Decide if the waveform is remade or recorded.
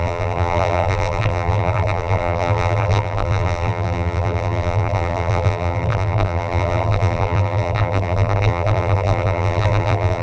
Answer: remade